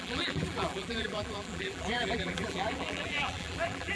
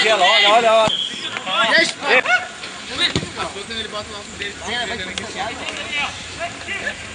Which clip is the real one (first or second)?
second